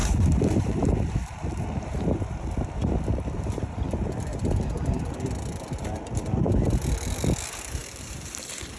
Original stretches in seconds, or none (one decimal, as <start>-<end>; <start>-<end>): 5.1-7.8